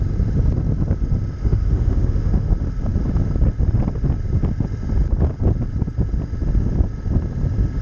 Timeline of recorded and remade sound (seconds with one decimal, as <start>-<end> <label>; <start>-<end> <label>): 0.0-1.4 recorded; 1.4-2.5 remade; 2.5-7.8 recorded